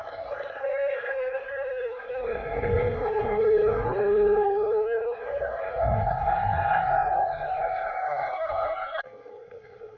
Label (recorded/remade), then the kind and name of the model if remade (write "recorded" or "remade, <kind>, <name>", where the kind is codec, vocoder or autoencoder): remade, codec, SNAC